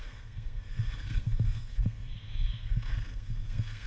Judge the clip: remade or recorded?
remade